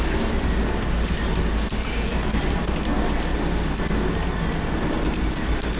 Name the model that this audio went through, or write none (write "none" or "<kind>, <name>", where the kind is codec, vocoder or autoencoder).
none